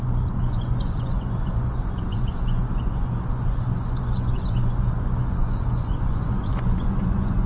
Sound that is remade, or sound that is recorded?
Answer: remade